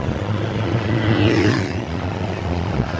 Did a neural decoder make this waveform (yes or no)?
yes